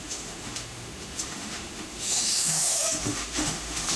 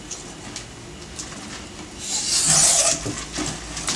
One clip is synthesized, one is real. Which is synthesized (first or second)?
first